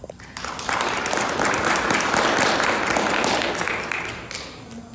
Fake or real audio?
real